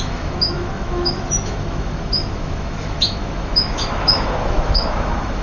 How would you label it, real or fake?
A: fake